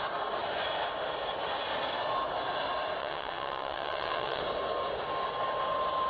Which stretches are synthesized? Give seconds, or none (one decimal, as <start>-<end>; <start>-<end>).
3.0-4.4